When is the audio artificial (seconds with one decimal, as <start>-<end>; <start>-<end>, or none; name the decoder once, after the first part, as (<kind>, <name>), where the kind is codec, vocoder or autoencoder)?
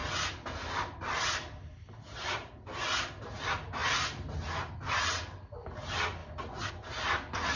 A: 6.2-6.7 (vocoder, BigVGAN v2)